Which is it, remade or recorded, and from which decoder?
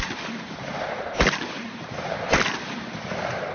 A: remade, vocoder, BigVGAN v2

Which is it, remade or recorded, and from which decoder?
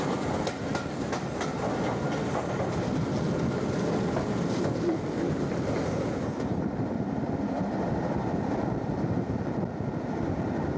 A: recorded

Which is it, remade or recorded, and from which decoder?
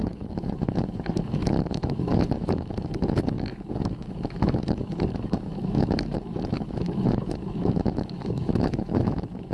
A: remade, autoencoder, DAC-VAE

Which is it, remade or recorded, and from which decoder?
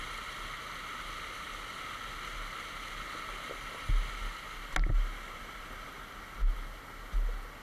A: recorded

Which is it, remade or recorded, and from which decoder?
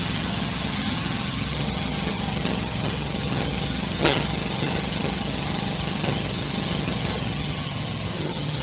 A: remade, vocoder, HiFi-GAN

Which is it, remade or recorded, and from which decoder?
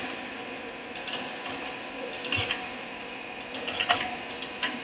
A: recorded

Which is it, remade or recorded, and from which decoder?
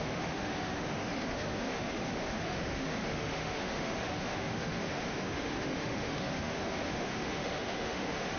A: remade, autoencoder, DAC-VAE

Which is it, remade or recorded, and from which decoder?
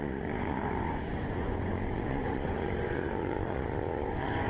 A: remade, vocoder, Vocos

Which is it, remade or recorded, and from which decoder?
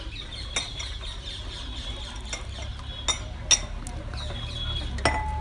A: recorded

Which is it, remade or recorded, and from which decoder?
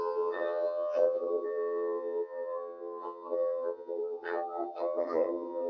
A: remade, vocoder, HiFi-GAN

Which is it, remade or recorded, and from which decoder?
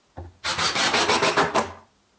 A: recorded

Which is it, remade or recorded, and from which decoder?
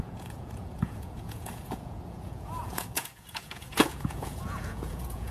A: remade, vocoder, Vocos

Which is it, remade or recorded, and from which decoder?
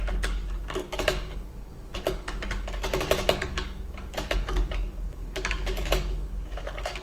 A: remade, codec, DAC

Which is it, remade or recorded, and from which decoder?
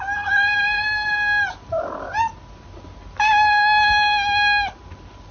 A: recorded